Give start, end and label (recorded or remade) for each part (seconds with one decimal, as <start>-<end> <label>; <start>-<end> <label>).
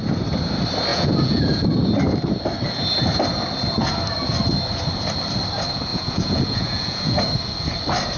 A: 0.0-0.9 recorded; 0.9-1.7 remade; 1.7-5.9 recorded; 5.9-7.2 remade; 7.2-8.2 recorded